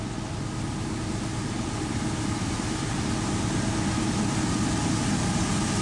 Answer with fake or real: real